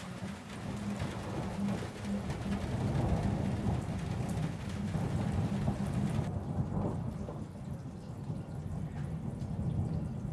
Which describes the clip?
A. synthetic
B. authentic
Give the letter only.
B